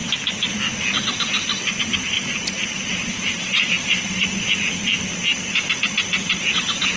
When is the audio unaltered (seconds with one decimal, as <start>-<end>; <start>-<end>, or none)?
0.0-2.9; 5.0-7.0